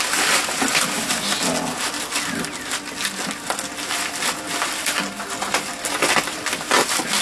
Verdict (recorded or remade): recorded